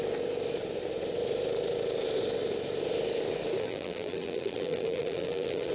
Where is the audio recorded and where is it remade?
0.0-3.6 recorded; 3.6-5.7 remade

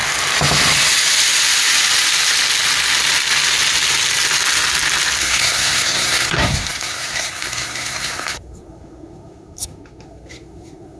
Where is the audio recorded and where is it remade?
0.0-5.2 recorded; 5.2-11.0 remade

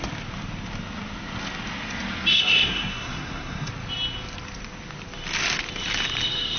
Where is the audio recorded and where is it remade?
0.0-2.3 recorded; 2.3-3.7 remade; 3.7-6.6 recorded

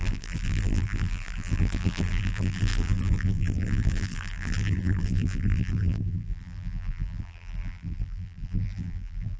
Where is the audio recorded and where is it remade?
0.0-9.4 remade